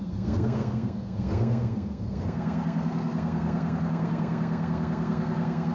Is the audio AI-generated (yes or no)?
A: yes